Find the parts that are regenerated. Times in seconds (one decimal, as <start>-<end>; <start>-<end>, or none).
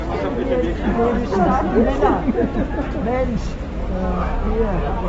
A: none